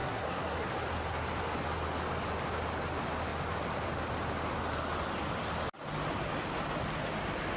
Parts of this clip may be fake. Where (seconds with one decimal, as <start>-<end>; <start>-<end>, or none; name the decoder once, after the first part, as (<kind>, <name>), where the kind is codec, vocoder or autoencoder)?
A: 0.0-0.7 (codec, SNAC)